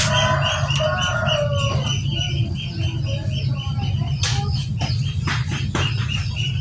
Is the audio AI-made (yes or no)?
no